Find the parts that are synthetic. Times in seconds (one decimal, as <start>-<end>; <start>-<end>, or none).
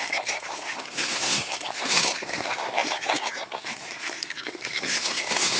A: 0.0-5.6